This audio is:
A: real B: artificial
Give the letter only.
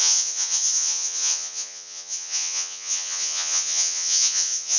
B